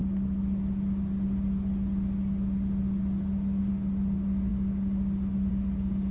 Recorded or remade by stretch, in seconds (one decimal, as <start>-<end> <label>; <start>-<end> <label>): 0.0-6.1 recorded